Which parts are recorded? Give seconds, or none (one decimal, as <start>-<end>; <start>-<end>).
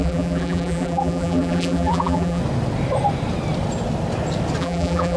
2.4-4.6